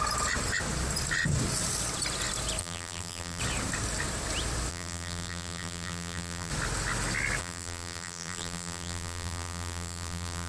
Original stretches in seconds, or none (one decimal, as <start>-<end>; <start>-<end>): 0.0-2.6; 3.4-4.7; 6.5-7.4